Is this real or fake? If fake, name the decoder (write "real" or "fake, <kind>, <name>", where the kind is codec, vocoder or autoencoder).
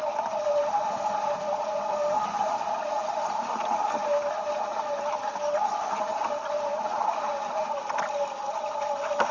real